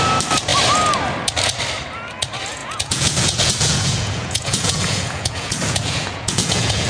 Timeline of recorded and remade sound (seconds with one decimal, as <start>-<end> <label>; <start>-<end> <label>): 0.0-2.6 recorded; 2.6-6.9 remade